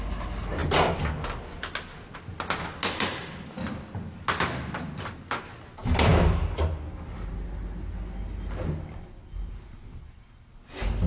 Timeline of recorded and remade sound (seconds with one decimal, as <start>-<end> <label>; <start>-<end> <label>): 0.0-11.1 recorded